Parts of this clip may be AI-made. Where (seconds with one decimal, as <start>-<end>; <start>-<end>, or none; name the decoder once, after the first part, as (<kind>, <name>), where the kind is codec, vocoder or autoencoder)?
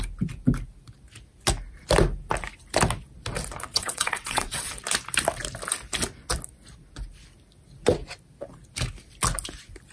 3.7-4.7 (vocoder, WaveNeXt)